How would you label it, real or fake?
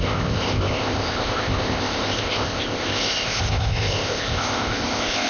fake